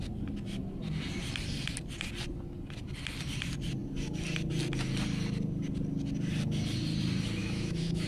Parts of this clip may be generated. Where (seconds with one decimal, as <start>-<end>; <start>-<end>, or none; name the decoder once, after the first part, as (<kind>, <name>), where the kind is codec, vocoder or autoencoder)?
7.4-8.1 (autoencoder, DAC-VAE)